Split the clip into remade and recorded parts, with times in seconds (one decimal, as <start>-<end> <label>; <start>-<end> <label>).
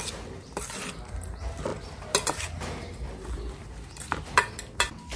0.0-5.2 recorded